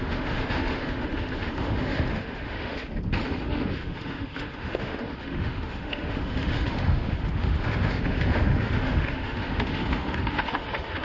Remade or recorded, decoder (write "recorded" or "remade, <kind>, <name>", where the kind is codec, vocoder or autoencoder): remade, autoencoder, DAC-VAE